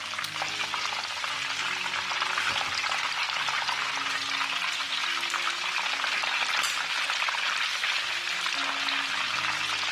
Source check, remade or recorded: recorded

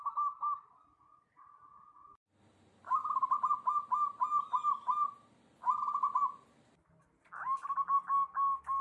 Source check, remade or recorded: recorded